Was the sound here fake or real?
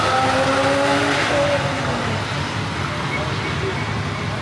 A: real